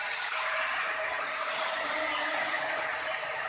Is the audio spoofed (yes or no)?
yes